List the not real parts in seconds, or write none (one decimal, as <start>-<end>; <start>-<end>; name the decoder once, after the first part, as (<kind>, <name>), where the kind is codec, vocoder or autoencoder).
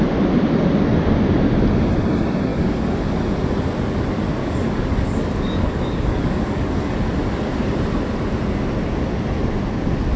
2.5-3.0 (codec, DAC); 4.4-7.0